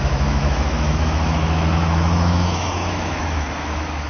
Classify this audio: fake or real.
fake